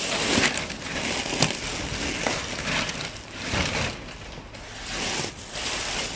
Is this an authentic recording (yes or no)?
yes